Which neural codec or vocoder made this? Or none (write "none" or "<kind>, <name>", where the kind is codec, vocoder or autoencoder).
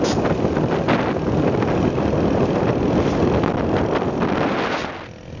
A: none